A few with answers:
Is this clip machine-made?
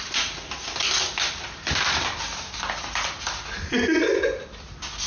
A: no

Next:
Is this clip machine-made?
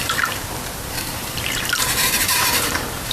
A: yes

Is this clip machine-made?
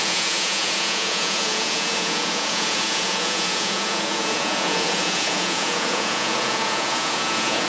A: yes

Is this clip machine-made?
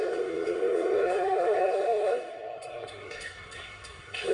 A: yes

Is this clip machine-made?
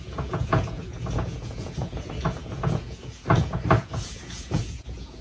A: yes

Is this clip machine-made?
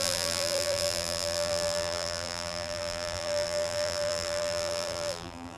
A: yes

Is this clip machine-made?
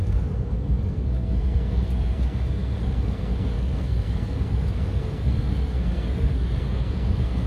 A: yes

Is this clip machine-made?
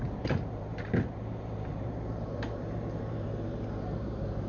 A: yes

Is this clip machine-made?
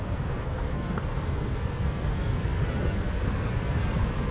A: yes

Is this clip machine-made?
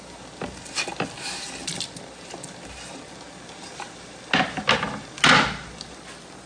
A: no